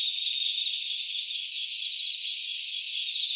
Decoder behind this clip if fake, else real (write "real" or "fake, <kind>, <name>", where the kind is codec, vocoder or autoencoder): real